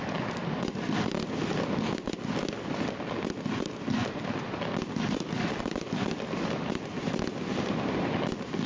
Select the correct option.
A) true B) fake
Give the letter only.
A